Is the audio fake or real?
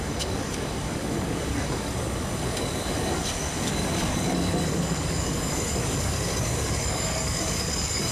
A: fake